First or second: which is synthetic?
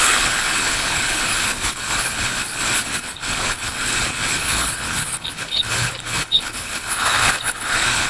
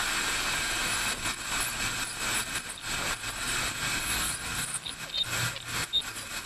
first